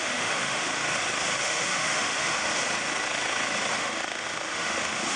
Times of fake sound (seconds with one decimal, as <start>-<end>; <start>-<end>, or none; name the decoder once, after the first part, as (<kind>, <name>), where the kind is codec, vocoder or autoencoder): 0.0-0.7 (autoencoder, DAC-VAE); 1.4-2.5; 3.7-5.2